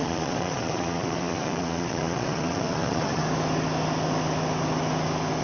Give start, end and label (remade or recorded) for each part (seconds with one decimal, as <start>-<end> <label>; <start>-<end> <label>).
0.0-3.2 remade; 3.2-5.4 recorded